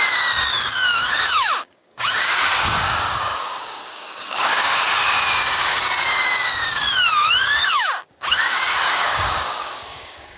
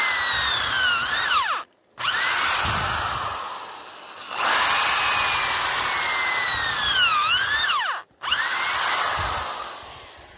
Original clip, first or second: second